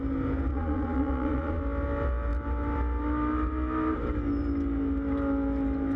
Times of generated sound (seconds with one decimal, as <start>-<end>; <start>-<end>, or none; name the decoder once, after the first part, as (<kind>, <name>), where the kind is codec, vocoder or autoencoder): 0.5-1.6 (vocoder, Vocos)